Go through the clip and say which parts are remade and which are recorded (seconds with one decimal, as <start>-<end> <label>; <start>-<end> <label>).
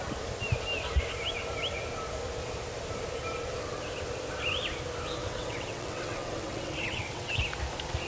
0.0-5.2 recorded; 5.2-7.4 remade; 7.4-8.1 recorded